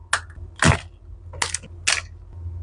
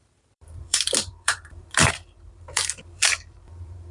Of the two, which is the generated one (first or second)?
second